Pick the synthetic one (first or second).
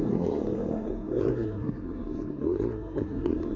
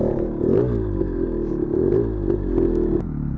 first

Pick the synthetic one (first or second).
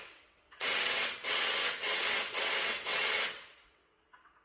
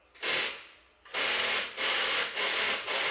first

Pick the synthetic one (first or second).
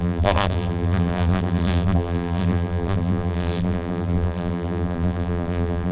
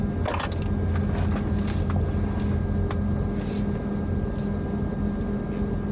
first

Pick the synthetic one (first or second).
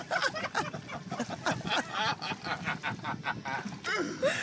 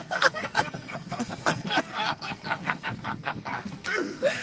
second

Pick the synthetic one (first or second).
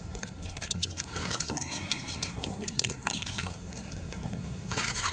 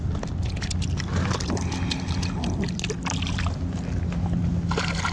first